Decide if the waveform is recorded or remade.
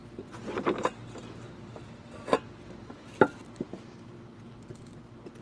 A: recorded